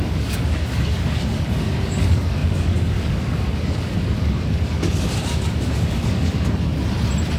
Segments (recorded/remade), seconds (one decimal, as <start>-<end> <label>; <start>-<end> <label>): 0.0-6.7 remade; 6.7-7.4 recorded